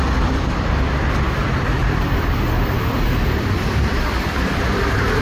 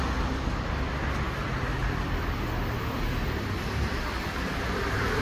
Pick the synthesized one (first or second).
first